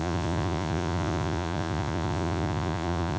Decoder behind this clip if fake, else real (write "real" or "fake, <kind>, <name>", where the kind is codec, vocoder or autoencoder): fake, vocoder, Vocos